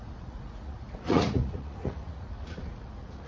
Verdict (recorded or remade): remade